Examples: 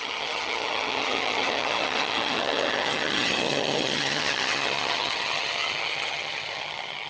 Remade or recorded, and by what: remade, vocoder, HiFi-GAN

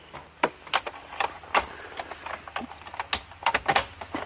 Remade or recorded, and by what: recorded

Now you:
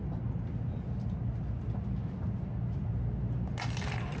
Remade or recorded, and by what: recorded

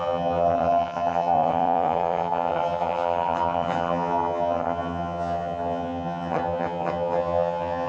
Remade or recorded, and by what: remade, vocoder, HiFi-GAN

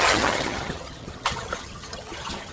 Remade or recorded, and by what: remade, vocoder, HiFi-GAN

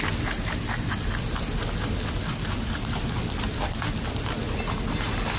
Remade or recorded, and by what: recorded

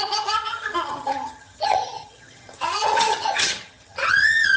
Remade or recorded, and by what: remade, vocoder, HiFi-GAN